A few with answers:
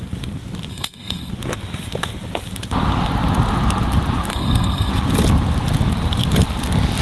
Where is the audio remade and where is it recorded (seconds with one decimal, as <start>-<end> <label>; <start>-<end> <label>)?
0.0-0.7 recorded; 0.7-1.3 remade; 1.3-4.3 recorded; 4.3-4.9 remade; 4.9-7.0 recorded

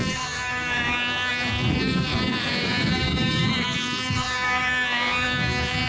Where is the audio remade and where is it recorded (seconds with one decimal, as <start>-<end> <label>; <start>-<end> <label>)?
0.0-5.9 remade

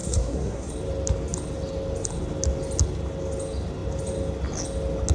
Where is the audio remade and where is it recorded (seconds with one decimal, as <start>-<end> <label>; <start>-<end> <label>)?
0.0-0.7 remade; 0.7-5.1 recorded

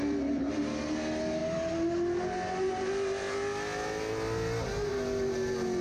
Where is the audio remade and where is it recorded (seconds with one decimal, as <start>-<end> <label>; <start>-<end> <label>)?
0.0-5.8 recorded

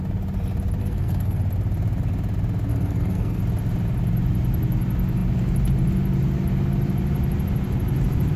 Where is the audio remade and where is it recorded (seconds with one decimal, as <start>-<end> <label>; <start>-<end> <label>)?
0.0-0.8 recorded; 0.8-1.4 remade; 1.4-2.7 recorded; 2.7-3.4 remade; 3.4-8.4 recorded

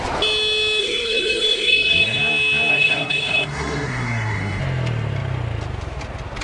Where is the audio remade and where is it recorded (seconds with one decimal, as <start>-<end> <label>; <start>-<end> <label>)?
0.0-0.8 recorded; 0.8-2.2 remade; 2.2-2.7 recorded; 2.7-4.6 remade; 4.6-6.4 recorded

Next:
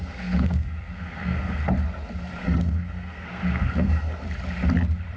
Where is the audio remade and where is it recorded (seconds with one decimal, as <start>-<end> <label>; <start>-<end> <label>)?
0.0-1.6 remade; 1.6-2.4 recorded; 2.4-4.1 remade; 4.1-5.2 recorded

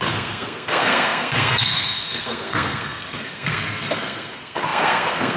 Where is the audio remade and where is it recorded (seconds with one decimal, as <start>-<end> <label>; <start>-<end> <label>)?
0.0-5.4 remade